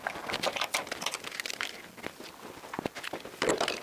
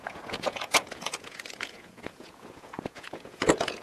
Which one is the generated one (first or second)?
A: second